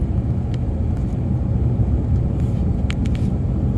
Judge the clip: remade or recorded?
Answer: recorded